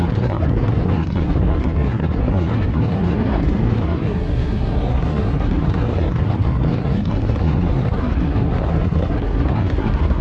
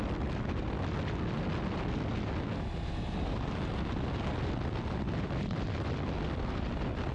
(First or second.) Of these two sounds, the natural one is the second